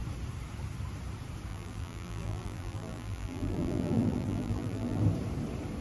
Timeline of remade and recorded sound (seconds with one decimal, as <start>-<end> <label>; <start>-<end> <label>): 0.0-1.5 recorded; 1.5-5.0 remade; 5.0-5.8 recorded